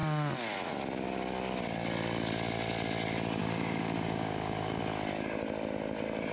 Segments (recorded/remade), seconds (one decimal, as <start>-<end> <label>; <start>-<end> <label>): 0.0-3.4 recorded; 3.4-4.8 remade; 4.8-6.3 recorded